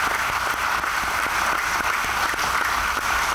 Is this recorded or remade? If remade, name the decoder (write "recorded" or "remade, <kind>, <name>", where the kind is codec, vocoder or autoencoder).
recorded